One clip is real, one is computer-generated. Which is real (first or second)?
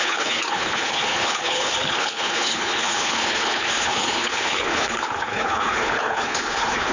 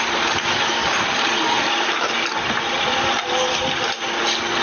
second